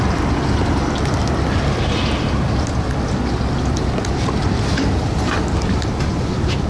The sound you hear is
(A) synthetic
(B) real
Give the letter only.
B